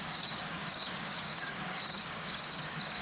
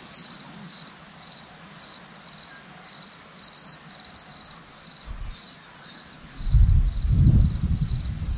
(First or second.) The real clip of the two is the second